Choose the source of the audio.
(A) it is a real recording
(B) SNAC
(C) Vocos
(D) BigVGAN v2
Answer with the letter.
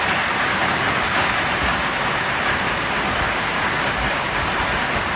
A